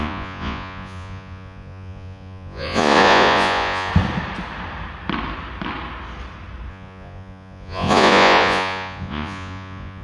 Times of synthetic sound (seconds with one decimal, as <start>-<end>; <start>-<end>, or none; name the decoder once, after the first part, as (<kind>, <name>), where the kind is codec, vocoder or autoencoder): 0.0-3.9 (vocoder, Vocos); 6.7-10.0